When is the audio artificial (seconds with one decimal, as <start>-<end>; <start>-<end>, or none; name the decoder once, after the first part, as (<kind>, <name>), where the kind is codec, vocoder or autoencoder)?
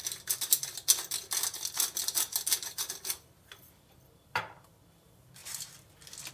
2.9-5.4 (vocoder, BigVGAN v2)